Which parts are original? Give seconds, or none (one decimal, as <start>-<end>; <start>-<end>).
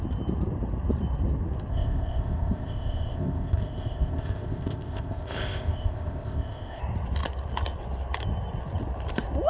0.0-1.7; 6.8-9.5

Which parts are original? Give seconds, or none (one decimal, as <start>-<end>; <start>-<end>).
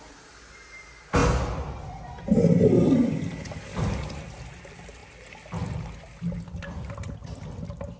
0.0-8.0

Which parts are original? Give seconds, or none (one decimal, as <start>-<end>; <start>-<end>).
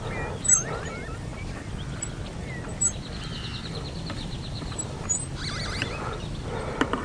0.0-7.0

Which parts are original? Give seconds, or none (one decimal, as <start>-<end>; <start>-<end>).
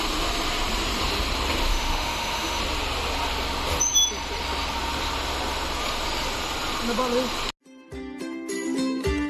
0.0-1.7; 2.6-9.3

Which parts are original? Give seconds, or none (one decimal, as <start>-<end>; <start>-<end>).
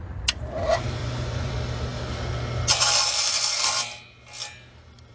0.0-1.0; 1.5-5.1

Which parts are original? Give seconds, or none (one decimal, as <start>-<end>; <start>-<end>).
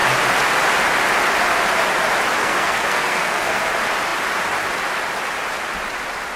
0.0-2.4; 3.6-6.4